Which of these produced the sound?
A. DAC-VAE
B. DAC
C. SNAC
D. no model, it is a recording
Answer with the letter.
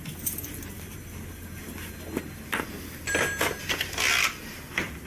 D